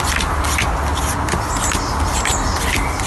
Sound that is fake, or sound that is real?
real